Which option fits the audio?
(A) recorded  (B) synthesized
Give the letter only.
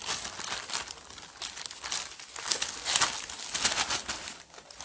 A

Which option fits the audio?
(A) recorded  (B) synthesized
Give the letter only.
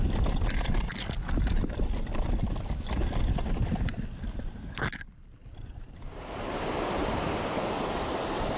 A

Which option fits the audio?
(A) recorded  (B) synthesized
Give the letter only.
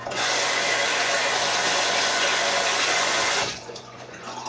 B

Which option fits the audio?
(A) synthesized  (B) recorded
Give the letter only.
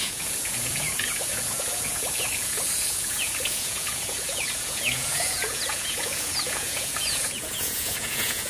A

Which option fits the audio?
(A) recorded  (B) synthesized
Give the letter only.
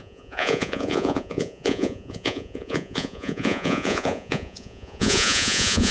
B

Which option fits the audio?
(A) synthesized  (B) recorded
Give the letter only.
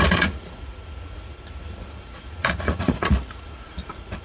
A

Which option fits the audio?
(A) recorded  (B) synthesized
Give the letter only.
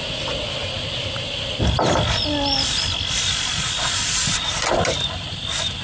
A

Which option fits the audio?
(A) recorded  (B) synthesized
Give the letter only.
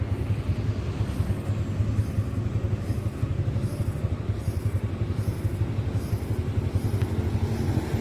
A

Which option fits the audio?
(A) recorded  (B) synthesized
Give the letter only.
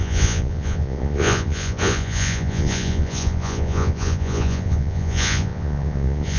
B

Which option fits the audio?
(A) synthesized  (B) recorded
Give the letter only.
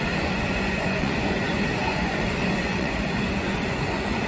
A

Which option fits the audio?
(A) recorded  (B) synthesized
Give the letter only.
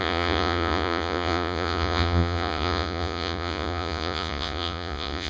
B